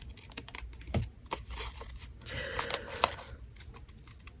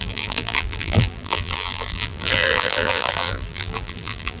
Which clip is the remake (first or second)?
second